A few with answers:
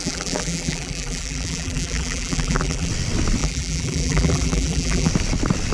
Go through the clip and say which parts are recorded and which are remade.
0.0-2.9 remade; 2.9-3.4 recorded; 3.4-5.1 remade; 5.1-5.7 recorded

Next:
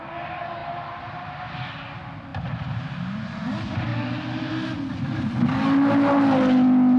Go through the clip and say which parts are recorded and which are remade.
0.0-2.3 recorded; 2.3-3.3 remade; 3.3-3.9 recorded; 3.9-4.5 remade; 4.5-7.0 recorded

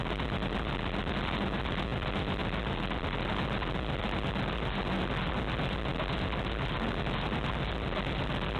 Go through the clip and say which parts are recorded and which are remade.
0.0-8.6 recorded

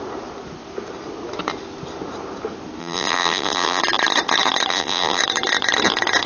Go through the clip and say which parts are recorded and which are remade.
0.0-2.8 recorded; 2.8-3.8 remade; 3.8-4.7 recorded; 4.7-5.2 remade; 5.2-6.3 recorded

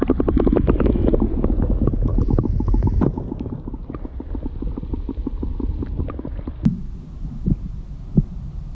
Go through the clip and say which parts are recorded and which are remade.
0.0-8.7 recorded

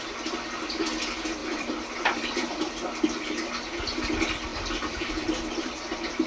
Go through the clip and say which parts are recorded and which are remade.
0.0-1.4 recorded; 1.4-2.6 remade; 2.6-4.5 recorded; 4.5-5.7 remade; 5.7-6.3 recorded